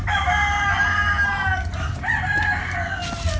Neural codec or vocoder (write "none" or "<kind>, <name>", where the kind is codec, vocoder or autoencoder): none